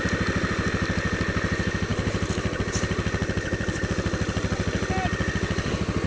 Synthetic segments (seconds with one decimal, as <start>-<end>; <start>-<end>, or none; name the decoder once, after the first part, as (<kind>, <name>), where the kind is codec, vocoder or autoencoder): none